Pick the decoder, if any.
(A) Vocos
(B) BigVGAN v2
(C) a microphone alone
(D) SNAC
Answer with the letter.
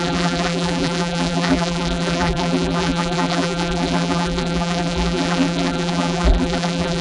B